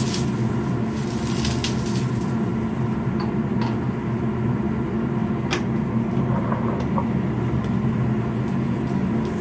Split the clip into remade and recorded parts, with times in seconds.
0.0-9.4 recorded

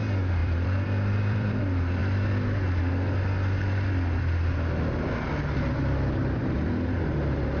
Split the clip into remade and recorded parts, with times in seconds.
0.0-0.4 recorded; 0.4-1.6 remade; 1.6-6.4 recorded; 6.4-7.0 remade; 7.0-7.6 recorded

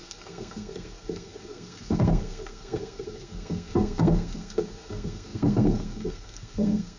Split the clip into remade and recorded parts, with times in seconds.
0.0-7.0 remade

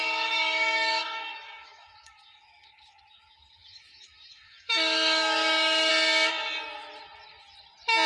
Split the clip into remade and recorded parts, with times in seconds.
0.0-5.9 remade; 5.9-8.1 recorded